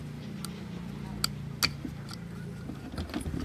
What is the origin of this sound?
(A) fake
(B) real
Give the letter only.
B